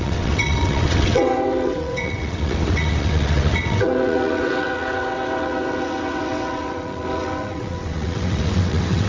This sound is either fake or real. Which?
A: fake